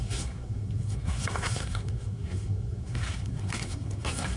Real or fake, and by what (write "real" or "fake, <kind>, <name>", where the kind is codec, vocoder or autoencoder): fake, codec, SNAC